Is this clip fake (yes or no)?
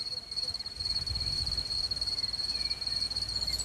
no